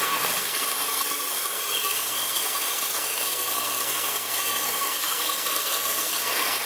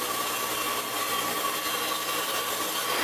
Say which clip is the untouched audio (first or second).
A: second